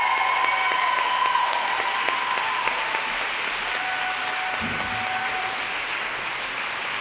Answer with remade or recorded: recorded